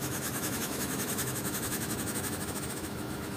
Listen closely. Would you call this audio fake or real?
fake